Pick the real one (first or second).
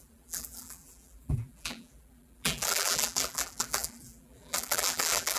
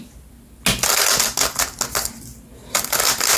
second